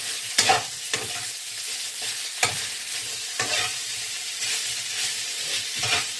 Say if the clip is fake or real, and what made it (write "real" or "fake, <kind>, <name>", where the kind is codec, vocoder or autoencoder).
fake, vocoder, BigVGAN v2